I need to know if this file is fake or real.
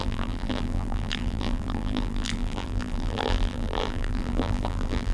fake